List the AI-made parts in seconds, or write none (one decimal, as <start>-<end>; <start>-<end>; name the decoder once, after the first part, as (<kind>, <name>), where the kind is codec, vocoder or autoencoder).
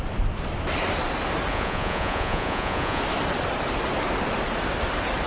1.5-3.0 (vocoder, Vocos)